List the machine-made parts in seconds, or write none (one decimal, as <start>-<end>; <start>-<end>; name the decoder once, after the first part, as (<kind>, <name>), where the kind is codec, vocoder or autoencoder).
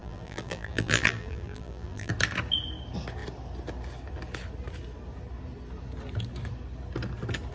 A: 0.0-2.1 (vocoder, BigVGAN v2)